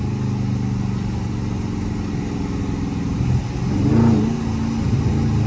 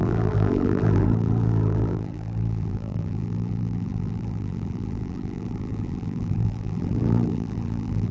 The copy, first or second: second